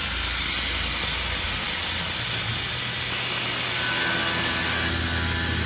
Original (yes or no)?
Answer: yes